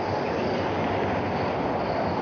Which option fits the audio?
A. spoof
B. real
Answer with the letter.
B